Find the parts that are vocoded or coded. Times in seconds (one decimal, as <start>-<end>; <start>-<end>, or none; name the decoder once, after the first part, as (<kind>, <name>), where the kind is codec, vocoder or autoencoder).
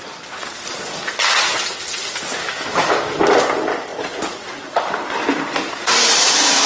2.4-3.2 (autoencoder, DAC-VAE); 6.2-6.7